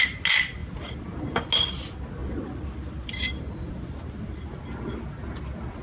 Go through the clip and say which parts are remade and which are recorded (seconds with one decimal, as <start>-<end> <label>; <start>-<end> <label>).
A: 0.0-0.6 recorded; 0.6-1.5 remade; 1.5-2.2 recorded; 2.2-4.4 remade; 4.4-5.8 recorded